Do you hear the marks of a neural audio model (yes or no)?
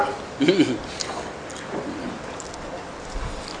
no